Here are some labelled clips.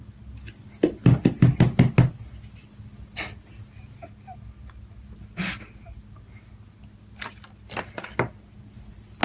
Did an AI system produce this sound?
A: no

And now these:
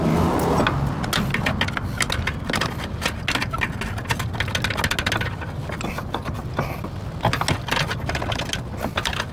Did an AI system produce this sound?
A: no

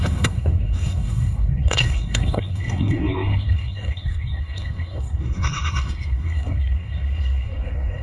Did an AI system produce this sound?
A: yes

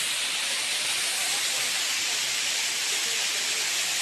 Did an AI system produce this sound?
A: no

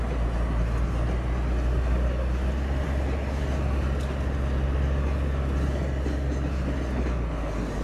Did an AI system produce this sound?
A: no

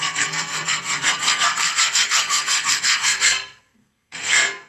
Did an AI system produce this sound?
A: yes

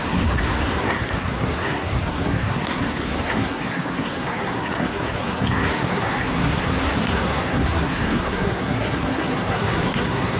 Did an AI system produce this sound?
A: yes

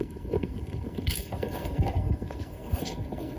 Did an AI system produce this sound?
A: yes